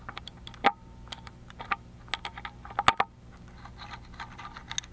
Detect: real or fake real